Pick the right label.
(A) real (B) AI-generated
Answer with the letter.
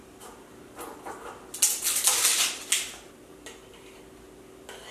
A